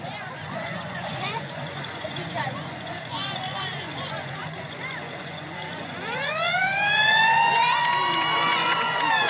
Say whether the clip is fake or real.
fake